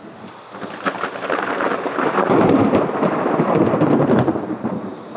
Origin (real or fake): real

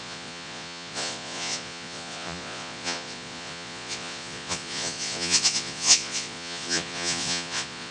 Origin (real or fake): fake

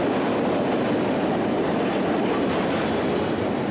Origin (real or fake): real